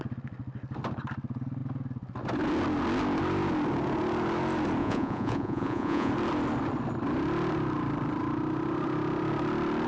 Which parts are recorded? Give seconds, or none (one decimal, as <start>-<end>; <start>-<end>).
0.0-4.8; 6.1-9.9